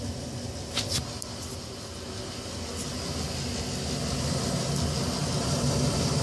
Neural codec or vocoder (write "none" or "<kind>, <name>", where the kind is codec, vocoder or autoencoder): none